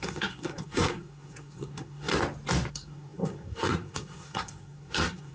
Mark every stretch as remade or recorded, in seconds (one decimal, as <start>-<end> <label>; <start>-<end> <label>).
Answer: 0.0-2.1 remade; 2.1-2.7 recorded; 2.7-5.3 remade